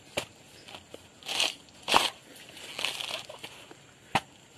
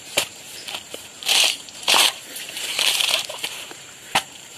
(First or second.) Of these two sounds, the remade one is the second